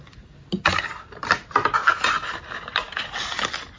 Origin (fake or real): real